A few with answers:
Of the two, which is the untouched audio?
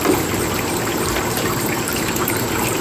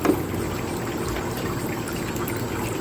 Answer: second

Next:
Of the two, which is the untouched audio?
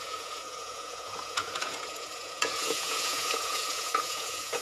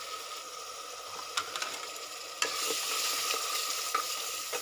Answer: second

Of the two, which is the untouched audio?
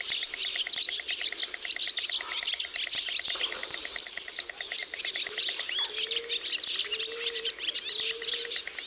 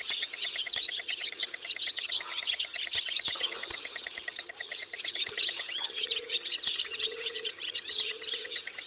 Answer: first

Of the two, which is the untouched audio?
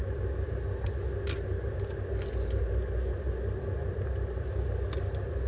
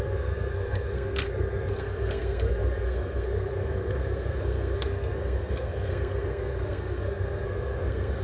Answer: first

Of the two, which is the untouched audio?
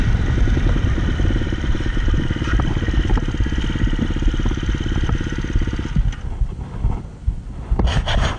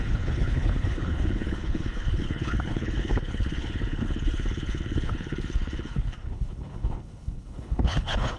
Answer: first